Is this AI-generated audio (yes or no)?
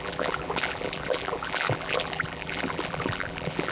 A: yes